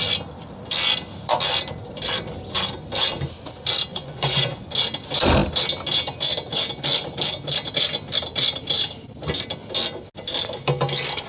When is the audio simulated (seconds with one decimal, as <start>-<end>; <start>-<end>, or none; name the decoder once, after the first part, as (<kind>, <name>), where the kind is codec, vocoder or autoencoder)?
3.9-4.7 (vocoder, Vocos)